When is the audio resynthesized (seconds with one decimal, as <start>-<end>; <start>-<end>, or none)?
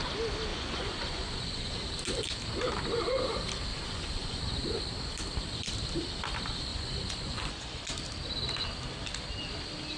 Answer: 0.5-1.7; 3.7-4.4; 6.7-7.8